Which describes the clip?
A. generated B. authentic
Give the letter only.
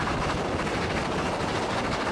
B